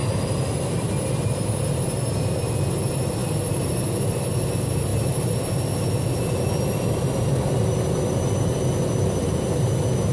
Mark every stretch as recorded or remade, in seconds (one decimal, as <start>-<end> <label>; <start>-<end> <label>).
0.0-3.2 recorded; 3.2-4.0 remade; 4.0-10.1 recorded